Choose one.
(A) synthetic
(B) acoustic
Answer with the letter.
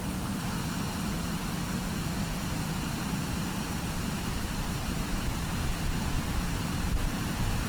A